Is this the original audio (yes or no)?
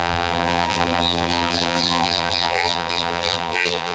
no